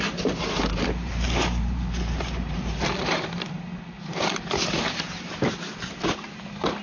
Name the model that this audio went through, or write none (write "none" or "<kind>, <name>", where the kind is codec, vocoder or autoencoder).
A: vocoder, BigVGAN v2